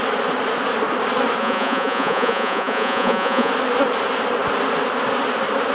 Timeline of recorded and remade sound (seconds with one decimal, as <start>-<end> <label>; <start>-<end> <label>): 0.0-1.4 recorded; 1.4-3.5 remade; 3.5-5.7 recorded